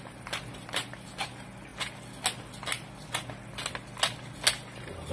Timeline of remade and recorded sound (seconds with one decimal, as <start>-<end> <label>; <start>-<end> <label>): 0.0-1.7 remade; 1.7-5.1 recorded